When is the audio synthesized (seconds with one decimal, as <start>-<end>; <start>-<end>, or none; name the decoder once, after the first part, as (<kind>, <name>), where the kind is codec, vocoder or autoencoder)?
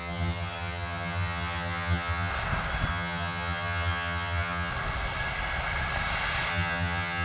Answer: 0.0-2.3 (vocoder, HiFi-GAN); 2.9-4.7; 6.5-7.2